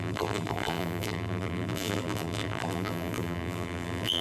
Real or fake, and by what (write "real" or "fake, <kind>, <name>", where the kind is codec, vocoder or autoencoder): fake, vocoder, BigVGAN v2